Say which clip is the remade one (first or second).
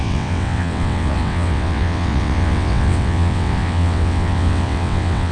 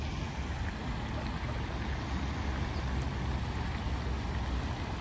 first